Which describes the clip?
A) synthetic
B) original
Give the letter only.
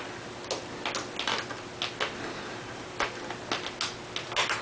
B